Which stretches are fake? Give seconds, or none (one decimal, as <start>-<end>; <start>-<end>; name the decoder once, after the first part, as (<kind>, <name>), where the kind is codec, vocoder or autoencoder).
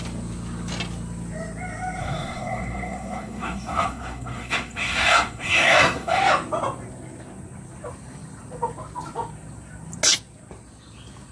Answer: 2.0-6.2 (codec, SNAC)